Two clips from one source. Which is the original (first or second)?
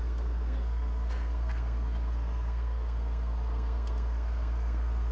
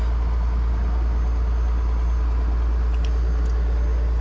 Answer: second